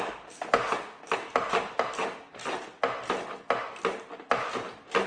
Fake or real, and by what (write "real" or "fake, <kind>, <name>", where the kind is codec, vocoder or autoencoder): real